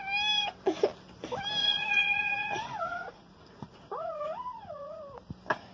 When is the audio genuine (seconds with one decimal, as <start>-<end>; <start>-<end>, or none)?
0.0-1.6; 5.0-5.7